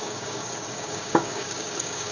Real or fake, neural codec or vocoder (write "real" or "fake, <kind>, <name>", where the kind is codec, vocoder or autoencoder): fake, codec, DAC